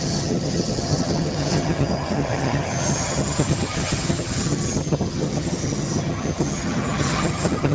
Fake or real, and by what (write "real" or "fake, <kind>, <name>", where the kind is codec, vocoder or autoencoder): fake, vocoder, HiFi-GAN